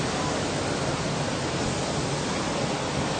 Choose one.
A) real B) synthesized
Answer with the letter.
A